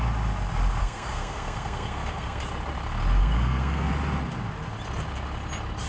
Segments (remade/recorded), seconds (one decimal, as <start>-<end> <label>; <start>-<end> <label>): 0.0-0.8 recorded; 0.8-2.4 remade; 2.4-3.2 recorded; 3.2-3.9 remade; 3.9-5.9 recorded